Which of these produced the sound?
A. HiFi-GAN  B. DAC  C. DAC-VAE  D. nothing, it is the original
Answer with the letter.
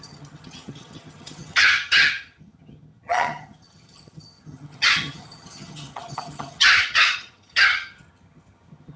A